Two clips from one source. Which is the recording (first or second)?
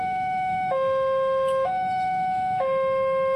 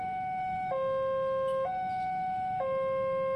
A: second